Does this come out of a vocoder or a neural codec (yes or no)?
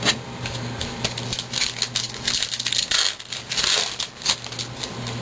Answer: no